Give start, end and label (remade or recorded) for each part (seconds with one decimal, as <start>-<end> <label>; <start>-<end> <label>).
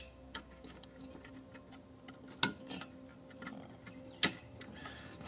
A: 0.0-1.1 remade; 1.1-4.8 recorded; 4.8-5.3 remade